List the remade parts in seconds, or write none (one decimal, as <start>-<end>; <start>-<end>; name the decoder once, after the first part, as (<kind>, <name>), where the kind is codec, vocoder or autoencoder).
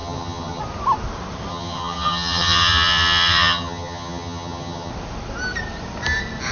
0.0-0.6 (vocoder, HiFi-GAN); 1.5-4.9